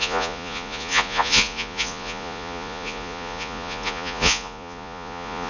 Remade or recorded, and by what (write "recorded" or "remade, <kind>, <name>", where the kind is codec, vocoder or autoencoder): remade, vocoder, Vocos